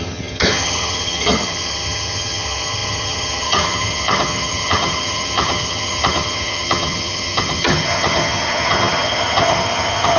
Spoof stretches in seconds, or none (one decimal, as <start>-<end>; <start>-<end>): 0.0-10.2